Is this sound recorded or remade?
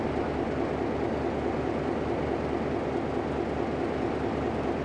recorded